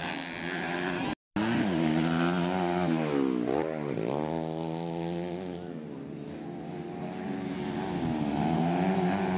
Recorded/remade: recorded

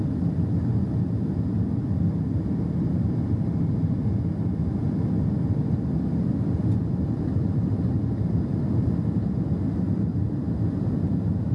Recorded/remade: remade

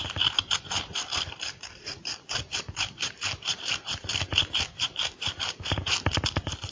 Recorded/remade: remade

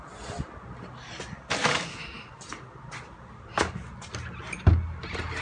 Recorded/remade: recorded